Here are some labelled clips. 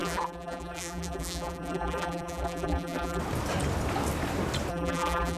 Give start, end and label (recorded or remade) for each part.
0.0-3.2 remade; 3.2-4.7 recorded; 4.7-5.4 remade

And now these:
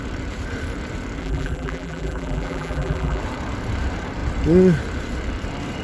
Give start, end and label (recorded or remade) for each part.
0.0-1.2 recorded; 1.2-3.2 remade; 3.2-5.8 recorded